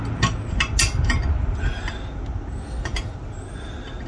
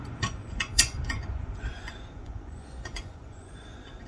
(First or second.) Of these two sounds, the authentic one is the first